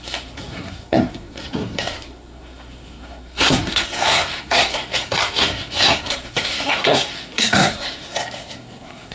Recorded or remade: remade